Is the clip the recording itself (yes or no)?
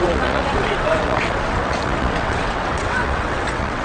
no